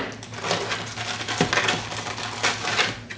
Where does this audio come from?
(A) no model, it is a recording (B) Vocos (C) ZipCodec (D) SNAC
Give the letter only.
A